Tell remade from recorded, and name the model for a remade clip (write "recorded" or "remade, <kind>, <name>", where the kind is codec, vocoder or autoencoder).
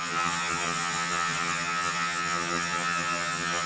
remade, vocoder, HiFi-GAN